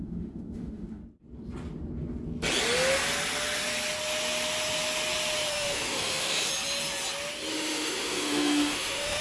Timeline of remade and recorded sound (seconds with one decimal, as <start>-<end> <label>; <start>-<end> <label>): 0.0-1.0 remade; 1.0-5.5 recorded; 5.5-6.5 remade; 6.5-7.5 recorded; 7.5-9.2 remade